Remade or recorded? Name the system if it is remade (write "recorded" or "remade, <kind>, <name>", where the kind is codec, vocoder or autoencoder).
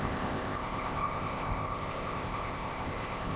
remade, codec, ZipCodec